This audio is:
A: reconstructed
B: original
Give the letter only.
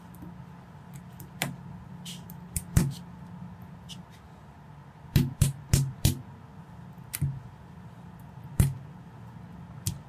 B